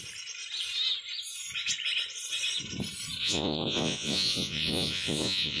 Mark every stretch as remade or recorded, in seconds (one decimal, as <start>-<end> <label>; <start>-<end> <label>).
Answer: 0.0-3.2 recorded; 3.2-5.6 remade